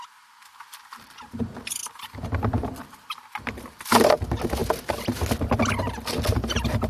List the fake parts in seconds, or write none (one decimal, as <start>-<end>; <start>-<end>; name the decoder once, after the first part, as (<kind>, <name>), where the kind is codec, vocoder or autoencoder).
none